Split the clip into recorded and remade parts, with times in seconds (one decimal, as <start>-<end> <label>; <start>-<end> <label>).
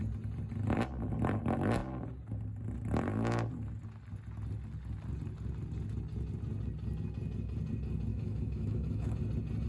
0.0-8.1 recorded; 8.1-9.2 remade; 9.2-9.7 recorded